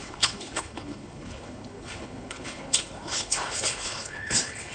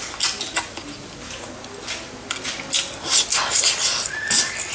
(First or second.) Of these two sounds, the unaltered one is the second